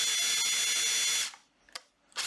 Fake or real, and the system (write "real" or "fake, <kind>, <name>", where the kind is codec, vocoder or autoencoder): real